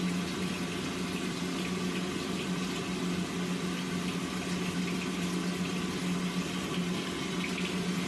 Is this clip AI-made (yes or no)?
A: no